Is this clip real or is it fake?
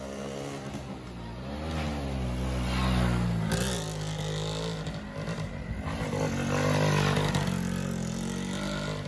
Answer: real